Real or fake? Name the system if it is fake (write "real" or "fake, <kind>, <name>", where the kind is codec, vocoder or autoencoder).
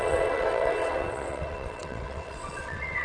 fake, vocoder, WaveNeXt